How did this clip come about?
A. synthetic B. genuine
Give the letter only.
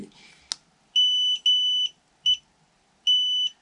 B